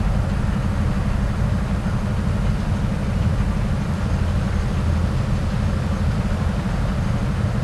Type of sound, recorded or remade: recorded